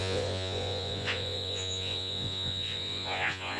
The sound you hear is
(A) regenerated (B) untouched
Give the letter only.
A